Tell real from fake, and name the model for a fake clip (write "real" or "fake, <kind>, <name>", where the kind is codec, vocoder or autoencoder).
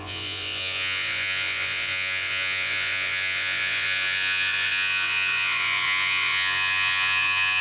fake, vocoder, Vocos